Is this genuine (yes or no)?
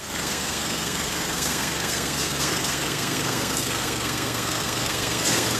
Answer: no